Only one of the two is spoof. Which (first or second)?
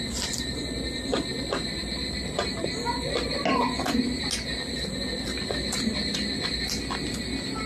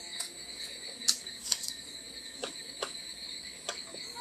second